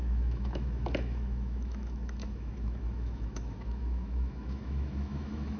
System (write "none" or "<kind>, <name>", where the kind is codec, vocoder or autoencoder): autoencoder, DAC-VAE